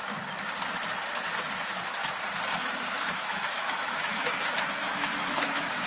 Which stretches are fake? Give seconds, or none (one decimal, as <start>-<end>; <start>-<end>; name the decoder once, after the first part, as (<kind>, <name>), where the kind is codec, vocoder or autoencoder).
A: 1.5-2.0 (autoencoder, DAC-VAE); 2.6-4.3; 4.8-5.9